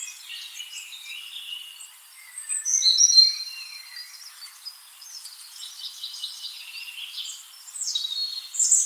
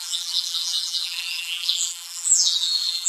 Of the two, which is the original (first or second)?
first